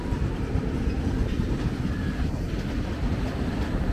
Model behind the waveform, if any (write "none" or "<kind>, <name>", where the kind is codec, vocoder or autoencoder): none